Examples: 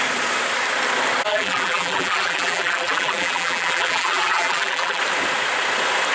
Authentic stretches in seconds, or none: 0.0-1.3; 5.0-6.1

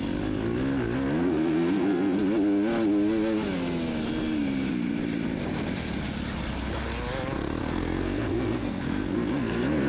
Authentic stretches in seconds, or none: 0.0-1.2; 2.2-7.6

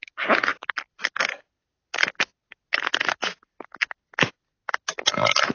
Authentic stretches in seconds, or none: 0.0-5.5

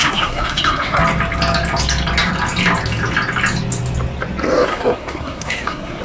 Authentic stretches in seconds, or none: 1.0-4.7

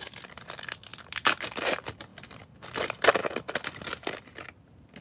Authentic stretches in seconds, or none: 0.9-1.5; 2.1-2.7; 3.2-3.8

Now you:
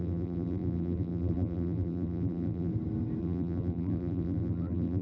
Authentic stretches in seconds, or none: 2.7-3.2

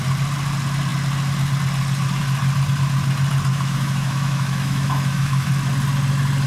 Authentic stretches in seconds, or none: 0.0-3.5; 5.5-6.5

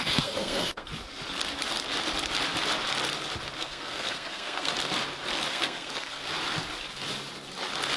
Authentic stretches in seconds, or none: 0.9-3.6; 4.7-5.5; 6.2-8.0